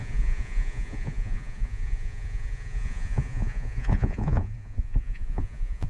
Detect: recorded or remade remade